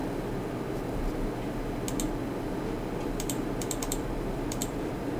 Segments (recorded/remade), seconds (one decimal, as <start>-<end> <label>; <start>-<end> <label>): 0.0-3.0 recorded; 3.0-5.2 remade